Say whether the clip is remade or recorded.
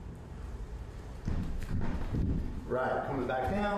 remade